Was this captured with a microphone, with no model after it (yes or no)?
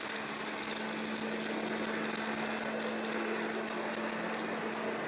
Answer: yes